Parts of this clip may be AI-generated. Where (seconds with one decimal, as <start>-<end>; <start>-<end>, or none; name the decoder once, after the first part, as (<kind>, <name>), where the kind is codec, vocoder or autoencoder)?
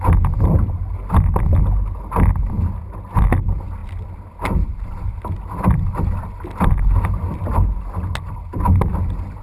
none